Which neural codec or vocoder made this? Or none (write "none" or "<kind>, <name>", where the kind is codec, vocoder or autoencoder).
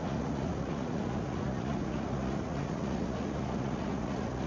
vocoder, Vocos